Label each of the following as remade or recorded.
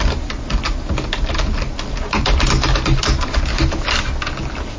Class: recorded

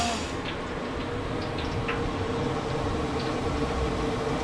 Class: recorded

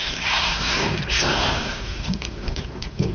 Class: remade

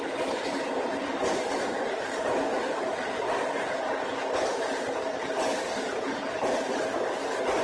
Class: recorded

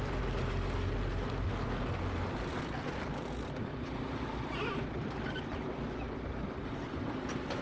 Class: recorded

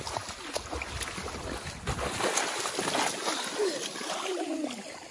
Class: recorded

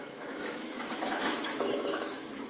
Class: remade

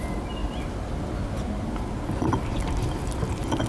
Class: recorded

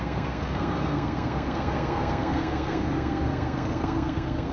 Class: remade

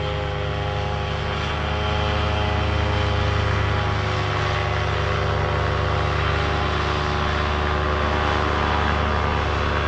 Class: recorded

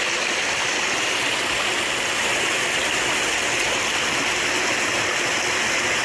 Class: recorded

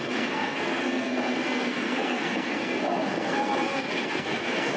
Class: remade